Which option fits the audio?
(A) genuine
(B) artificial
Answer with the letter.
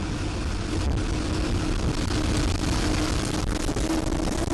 A